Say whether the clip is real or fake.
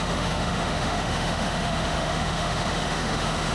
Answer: fake